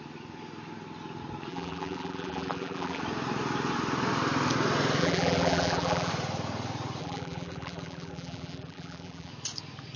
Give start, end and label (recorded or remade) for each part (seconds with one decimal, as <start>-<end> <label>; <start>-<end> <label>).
0.0-1.5 recorded; 1.5-3.0 remade; 3.0-5.0 recorded; 5.0-6.1 remade; 6.1-7.0 recorded; 7.0-9.3 remade; 9.3-10.0 recorded